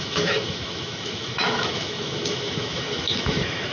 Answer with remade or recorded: remade